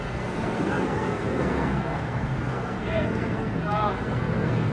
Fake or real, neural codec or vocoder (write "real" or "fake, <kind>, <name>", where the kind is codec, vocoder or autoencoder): fake, codec, SNAC